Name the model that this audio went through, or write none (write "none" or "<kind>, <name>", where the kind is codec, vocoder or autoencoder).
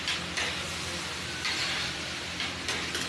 none